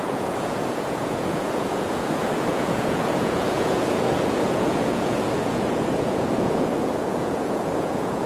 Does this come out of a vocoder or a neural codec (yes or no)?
yes